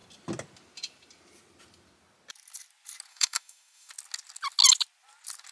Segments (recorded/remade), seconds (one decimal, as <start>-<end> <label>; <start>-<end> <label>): 0.0-3.1 recorded; 3.1-3.9 remade; 3.9-5.5 recorded